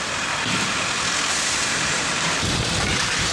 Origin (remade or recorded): remade